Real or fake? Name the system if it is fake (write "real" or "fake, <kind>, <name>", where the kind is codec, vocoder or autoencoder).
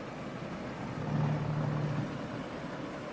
real